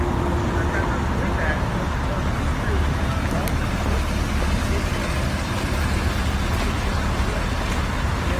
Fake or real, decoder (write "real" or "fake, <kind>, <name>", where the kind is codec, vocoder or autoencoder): real